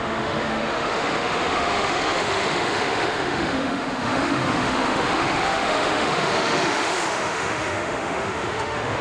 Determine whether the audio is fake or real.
fake